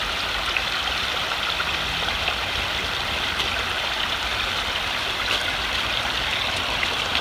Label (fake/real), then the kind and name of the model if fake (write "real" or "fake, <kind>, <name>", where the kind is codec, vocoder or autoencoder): real